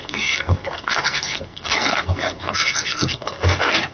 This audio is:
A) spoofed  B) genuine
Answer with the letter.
A